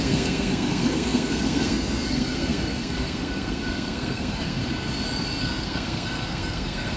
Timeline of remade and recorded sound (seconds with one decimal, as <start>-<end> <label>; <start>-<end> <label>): 0.0-4.6 remade; 4.6-5.4 recorded; 5.4-7.0 remade